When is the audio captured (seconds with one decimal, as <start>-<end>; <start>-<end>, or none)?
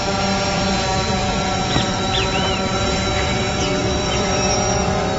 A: 0.0-1.2; 2.6-3.8; 4.3-5.2